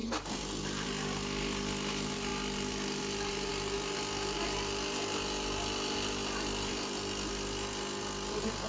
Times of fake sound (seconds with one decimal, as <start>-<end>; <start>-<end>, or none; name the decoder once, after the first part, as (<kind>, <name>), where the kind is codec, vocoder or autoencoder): none